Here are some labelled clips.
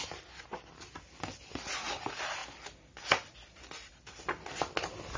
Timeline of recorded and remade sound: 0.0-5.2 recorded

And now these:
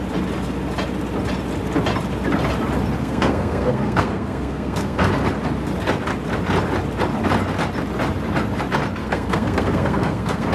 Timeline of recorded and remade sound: 0.0-3.0 recorded; 3.0-5.1 remade; 5.1-9.0 recorded; 9.0-10.5 remade

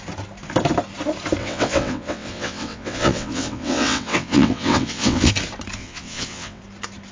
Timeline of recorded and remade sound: 0.0-1.4 recorded; 1.4-5.3 remade; 5.3-5.8 recorded; 5.8-6.6 remade; 6.6-7.1 recorded

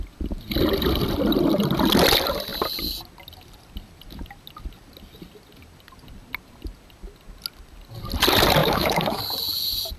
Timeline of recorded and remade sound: 0.0-8.6 recorded; 8.6-9.2 remade; 9.2-10.0 recorded